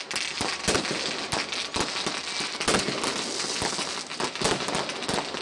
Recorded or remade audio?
recorded